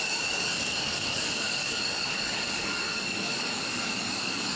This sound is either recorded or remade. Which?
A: remade